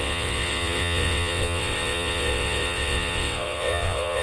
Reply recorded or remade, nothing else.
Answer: remade